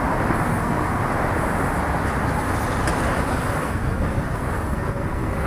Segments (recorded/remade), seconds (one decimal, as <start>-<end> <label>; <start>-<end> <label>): 0.0-0.5 recorded; 0.5-1.0 remade; 1.0-3.6 recorded; 3.6-5.5 remade